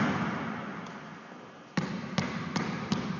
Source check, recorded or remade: recorded